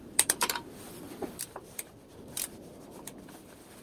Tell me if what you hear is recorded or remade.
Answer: remade